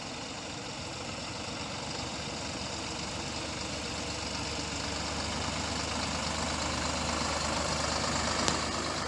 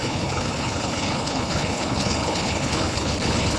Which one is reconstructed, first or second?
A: second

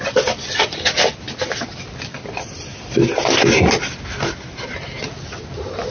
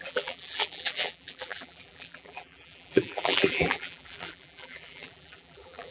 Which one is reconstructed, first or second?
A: second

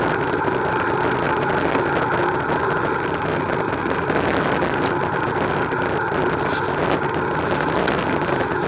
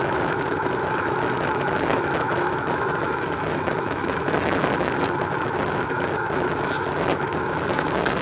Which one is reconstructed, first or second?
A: second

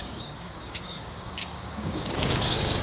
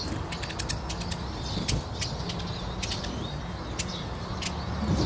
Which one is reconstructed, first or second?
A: first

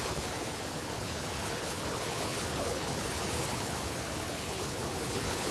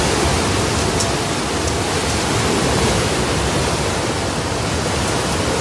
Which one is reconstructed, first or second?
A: first